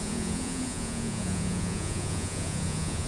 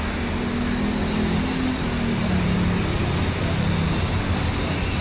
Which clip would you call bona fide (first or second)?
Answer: second